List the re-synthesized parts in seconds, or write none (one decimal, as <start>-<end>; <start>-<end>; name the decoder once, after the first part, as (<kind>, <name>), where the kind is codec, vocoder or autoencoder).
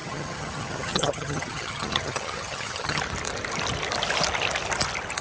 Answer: 0.0-3.0 (vocoder, HiFi-GAN)